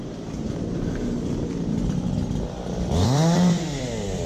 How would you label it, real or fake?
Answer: fake